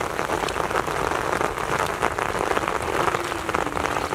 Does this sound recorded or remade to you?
recorded